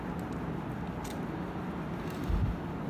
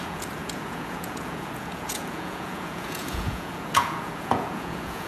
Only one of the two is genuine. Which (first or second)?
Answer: first